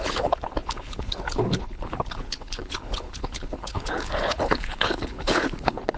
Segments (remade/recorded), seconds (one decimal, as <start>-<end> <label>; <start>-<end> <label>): 0.0-6.0 remade

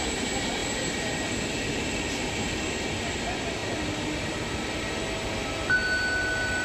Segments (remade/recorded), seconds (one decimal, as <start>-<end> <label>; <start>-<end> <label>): 0.0-6.6 recorded

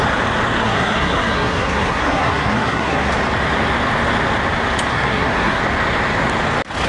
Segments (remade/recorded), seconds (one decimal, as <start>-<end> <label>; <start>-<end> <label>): 0.0-0.6 recorded; 0.6-3.1 remade; 3.1-4.9 recorded; 4.9-5.6 remade; 5.6-6.9 recorded

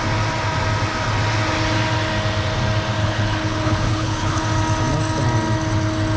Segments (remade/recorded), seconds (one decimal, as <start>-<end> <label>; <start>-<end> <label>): 0.0-3.0 recorded; 3.0-4.4 remade; 4.4-6.2 recorded

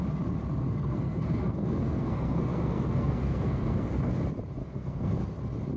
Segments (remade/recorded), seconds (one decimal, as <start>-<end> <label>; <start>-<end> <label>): 0.0-0.6 recorded; 0.6-4.1 remade; 4.1-4.6 recorded; 4.6-5.2 remade; 5.2-5.8 recorded

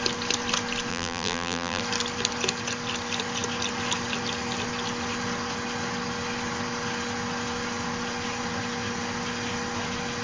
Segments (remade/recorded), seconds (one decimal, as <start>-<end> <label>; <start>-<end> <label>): 0.0-0.9 recorded; 0.9-1.8 remade; 1.8-10.2 recorded

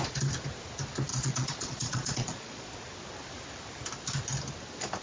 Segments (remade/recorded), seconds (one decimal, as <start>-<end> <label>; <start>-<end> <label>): 0.0-1.1 recorded; 1.1-2.7 remade; 2.7-5.0 recorded

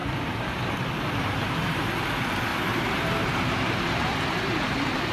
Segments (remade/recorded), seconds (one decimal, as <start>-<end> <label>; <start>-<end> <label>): 0.0-1.9 remade; 1.9-2.5 recorded; 2.5-5.1 remade